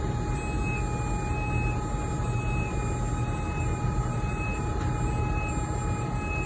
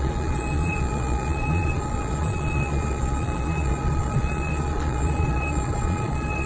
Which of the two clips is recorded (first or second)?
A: first